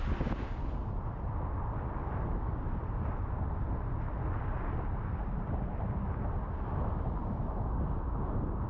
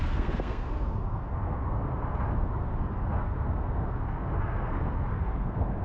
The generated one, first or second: second